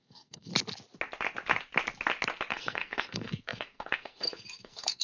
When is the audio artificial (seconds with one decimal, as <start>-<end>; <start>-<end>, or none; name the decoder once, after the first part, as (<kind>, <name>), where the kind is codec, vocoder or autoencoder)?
0.0-0.5 (codec, SNAC); 2.5-5.0